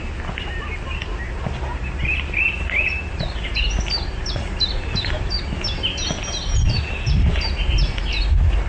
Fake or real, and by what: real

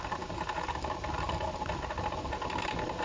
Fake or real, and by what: real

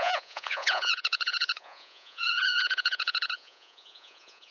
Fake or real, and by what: fake, vocoder, Vocos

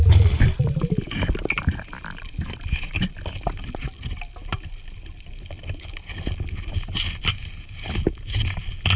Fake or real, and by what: real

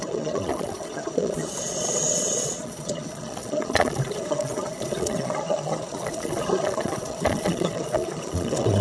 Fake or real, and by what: fake, vocoder, Vocos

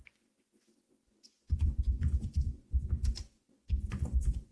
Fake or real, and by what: fake, vocoder, Vocos